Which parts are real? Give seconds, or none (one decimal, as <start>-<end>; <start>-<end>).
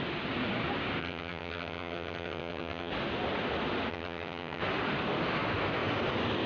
0.0-1.0; 2.9-3.9; 4.6-6.5